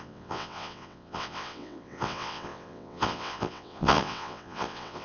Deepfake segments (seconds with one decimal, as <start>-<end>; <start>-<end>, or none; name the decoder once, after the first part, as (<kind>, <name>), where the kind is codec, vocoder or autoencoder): 0.0-5.0 (vocoder, WaveNeXt)